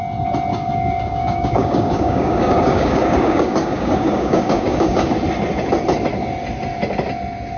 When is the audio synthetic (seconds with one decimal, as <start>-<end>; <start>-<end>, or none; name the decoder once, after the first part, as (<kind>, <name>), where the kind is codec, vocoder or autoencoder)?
0.5-5.1 (codec, DAC)